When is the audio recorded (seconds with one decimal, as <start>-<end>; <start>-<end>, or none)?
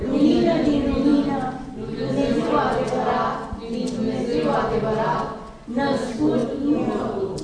0.0-7.4